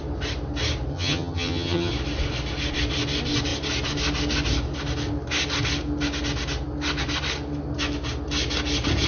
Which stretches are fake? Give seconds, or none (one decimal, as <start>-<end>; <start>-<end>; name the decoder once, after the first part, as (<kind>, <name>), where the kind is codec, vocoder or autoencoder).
0.9-1.9 (vocoder, HiFi-GAN)